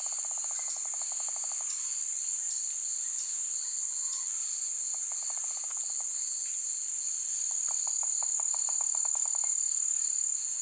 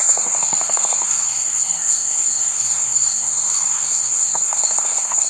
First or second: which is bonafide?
first